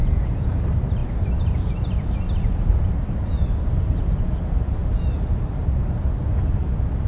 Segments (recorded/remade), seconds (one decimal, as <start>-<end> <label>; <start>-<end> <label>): 0.0-0.6 remade; 0.6-7.1 recorded

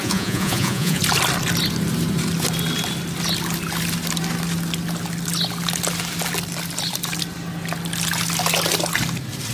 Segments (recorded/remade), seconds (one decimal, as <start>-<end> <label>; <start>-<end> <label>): 0.0-1.0 remade; 1.0-9.5 recorded

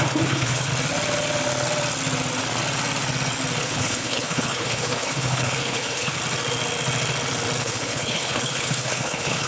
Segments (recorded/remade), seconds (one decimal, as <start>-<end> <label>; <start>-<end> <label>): 0.0-0.7 remade; 0.7-3.6 recorded; 3.6-6.2 remade; 6.2-7.6 recorded; 7.6-9.5 remade

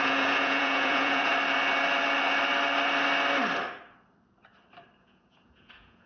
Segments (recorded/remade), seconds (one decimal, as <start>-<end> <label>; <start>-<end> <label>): 0.0-1.3 remade; 1.3-5.0 recorded; 5.0-6.1 remade